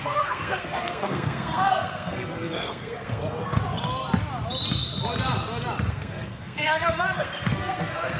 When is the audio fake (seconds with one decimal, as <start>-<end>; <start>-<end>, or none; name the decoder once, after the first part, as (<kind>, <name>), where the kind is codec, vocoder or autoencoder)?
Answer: 0.0-3.6 (codec, SNAC); 5.9-8.2